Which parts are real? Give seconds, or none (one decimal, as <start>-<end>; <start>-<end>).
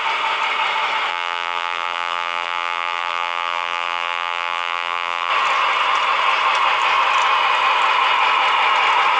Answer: 0.0-1.1; 5.3-9.2